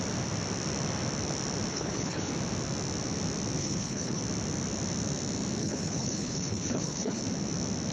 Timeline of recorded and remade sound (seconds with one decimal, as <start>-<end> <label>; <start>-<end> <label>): 0.0-1.7 recorded; 1.7-2.3 remade; 2.3-3.6 recorded; 3.6-4.2 remade; 4.2-5.6 recorded; 5.6-7.2 remade; 7.2-7.9 recorded